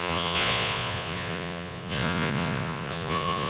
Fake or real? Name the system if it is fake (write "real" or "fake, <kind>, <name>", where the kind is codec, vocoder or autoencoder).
fake, vocoder, Vocos